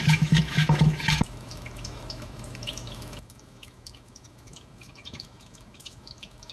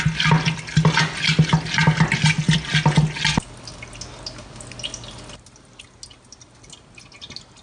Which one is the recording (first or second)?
second